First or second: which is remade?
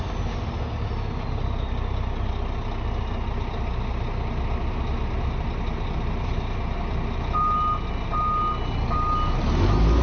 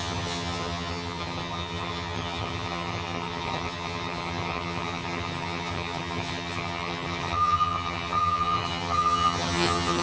second